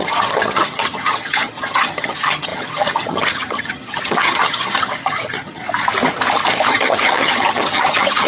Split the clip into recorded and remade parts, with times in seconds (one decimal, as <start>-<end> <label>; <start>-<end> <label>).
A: 0.0-5.6 remade; 5.6-6.7 recorded; 6.7-8.3 remade

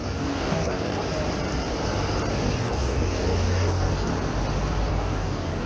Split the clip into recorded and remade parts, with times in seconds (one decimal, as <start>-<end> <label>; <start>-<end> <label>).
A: 0.0-1.0 remade; 1.0-2.6 recorded; 2.6-4.1 remade; 4.1-4.9 recorded; 4.9-5.7 remade

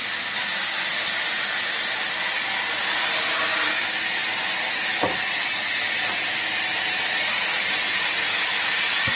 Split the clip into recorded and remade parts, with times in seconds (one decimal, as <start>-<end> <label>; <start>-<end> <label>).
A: 0.0-9.2 recorded

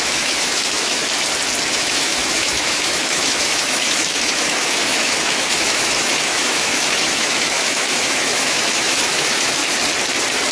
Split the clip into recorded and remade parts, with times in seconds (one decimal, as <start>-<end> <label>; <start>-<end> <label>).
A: 0.0-1.0 remade; 1.0-1.7 recorded; 1.7-9.6 remade; 9.6-10.5 recorded

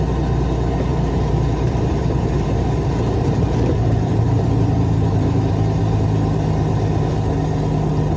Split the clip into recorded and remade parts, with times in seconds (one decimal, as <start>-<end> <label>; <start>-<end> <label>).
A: 0.0-0.9 recorded; 0.9-5.8 remade; 5.8-8.2 recorded